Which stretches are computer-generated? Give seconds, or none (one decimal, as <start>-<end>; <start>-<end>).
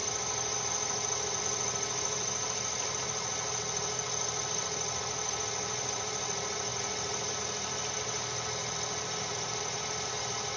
none